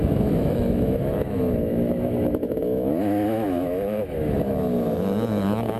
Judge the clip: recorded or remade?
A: remade